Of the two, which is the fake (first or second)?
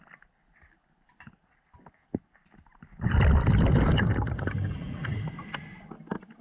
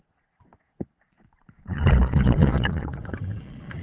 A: second